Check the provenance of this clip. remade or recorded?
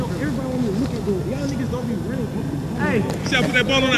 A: recorded